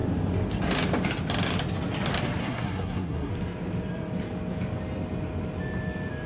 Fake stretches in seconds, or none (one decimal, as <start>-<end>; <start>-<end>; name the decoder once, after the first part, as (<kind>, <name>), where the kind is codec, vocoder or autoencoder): 2.4-3.3 (codec, SNAC)